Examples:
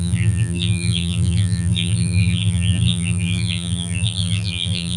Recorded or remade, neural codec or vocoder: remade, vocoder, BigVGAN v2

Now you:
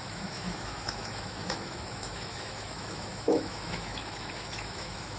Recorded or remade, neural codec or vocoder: remade, autoencoder, DAC-VAE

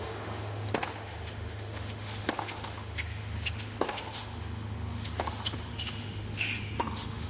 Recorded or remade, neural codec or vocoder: remade, autoencoder, DAC-VAE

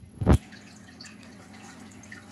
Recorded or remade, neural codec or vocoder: remade, vocoder, WaveNeXt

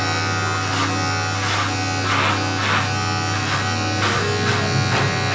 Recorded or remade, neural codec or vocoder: recorded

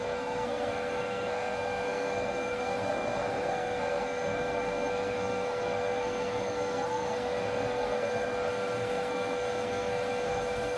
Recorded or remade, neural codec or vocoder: remade, codec, SNAC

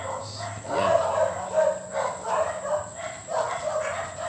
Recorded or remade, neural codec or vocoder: recorded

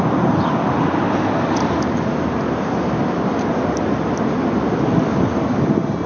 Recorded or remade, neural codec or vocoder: recorded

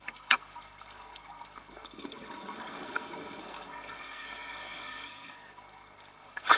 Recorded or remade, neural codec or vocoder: remade, codec, SNAC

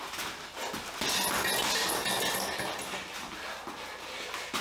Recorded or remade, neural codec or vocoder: recorded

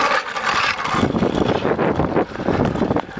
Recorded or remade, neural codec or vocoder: remade, vocoder, BigVGAN v2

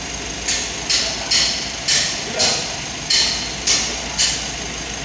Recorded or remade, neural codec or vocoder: recorded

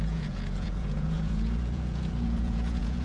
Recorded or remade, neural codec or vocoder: remade, vocoder, Vocos